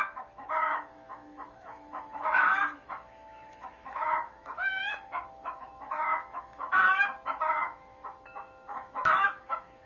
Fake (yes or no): yes